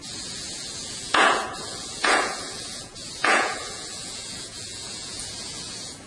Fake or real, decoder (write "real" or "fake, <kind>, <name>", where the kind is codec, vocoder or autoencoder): fake, vocoder, Vocos